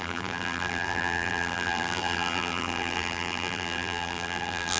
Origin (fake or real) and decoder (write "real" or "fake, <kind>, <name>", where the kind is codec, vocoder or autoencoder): fake, vocoder, BigVGAN v2